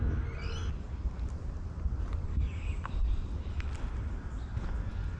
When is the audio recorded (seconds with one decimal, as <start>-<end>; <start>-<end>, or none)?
0.0-2.3; 2.9-5.2